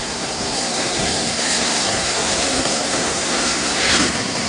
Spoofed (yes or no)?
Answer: yes